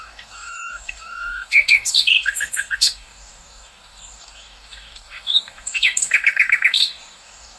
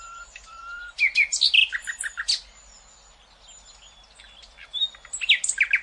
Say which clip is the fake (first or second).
first